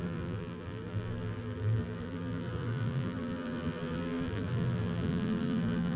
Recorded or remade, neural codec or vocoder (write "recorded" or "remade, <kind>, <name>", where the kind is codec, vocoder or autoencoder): remade, vocoder, BigVGAN v2